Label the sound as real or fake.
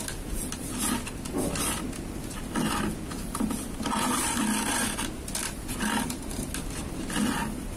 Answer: real